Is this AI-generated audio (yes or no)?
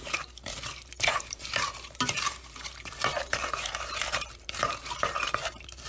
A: yes